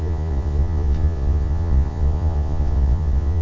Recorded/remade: remade